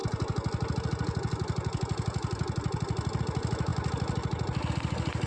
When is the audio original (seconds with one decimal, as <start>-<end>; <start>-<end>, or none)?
0.0-5.3